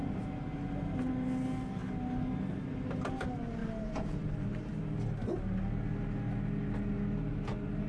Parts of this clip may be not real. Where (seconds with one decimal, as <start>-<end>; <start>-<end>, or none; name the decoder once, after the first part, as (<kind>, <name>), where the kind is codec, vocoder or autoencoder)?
3.6-4.7 (vocoder, BigVGAN v2)